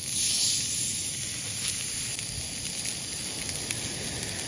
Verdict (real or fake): real